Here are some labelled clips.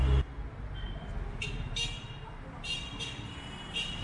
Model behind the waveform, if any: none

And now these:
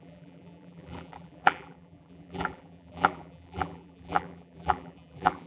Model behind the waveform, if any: vocoder, BigVGAN v2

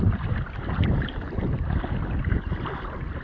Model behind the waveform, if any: vocoder, BigVGAN v2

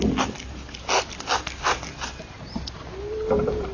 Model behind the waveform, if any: none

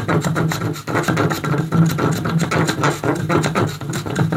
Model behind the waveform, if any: none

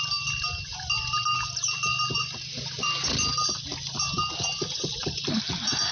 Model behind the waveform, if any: none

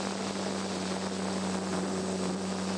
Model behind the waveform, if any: none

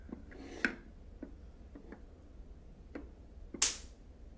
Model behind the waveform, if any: none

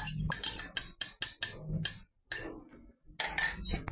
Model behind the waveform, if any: none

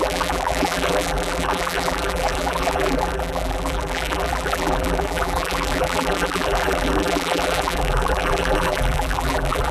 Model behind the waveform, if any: vocoder, BigVGAN v2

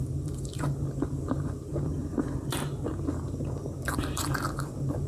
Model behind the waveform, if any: vocoder, BigVGAN v2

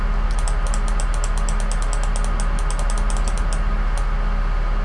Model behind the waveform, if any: none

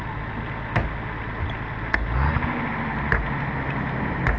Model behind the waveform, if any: none